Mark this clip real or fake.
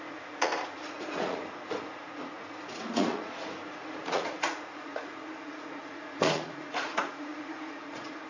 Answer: fake